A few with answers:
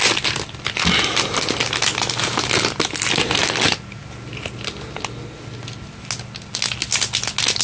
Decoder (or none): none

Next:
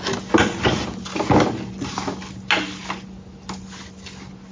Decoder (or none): none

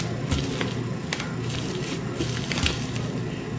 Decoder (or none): none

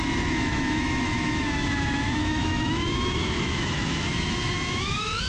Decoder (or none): autoencoder, DAC-VAE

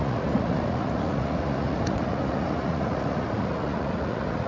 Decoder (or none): vocoder, Vocos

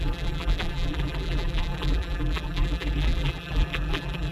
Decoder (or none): vocoder, BigVGAN v2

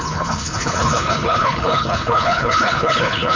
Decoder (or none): codec, HILCodec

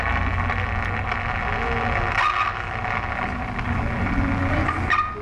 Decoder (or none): none